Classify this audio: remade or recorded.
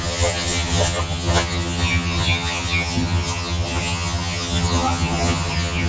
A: remade